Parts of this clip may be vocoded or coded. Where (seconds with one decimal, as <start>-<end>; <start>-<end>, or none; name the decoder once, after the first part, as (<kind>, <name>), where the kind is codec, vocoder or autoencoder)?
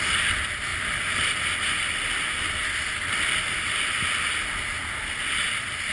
none